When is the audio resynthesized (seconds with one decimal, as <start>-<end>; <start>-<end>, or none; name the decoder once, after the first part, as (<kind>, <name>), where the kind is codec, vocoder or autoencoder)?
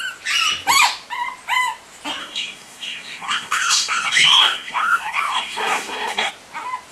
2.2-6.3 (codec, SNAC)